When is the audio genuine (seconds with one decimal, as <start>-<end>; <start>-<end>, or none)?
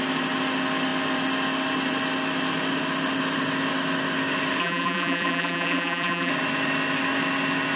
0.0-4.6; 6.3-7.8